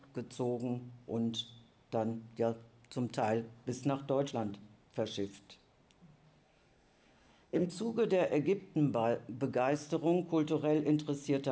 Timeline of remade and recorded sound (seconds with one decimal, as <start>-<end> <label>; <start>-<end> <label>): 0.0-6.4 recorded; 6.4-7.7 remade; 7.7-11.5 recorded